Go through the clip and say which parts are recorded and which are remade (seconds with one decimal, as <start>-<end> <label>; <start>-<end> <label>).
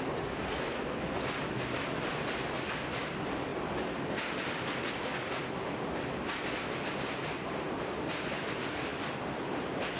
0.0-10.0 recorded